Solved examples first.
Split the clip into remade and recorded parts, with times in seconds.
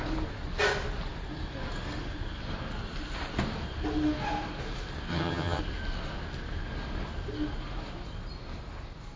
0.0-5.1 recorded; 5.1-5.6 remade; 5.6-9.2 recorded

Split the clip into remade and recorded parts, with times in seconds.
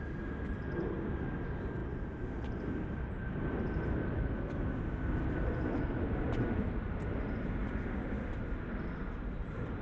0.0-9.8 recorded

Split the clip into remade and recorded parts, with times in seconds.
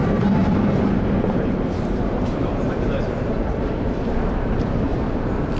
0.0-4.9 remade; 4.9-5.6 recorded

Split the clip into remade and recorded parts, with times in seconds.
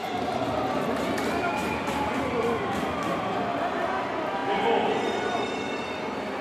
0.0-6.4 recorded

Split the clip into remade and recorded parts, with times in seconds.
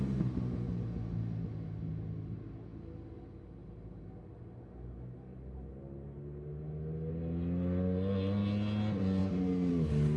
0.0-10.2 recorded